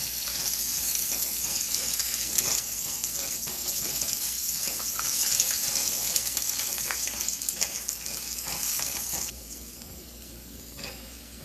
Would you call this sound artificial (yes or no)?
yes